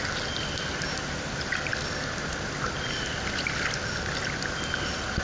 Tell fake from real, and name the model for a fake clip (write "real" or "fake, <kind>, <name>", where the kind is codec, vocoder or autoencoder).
real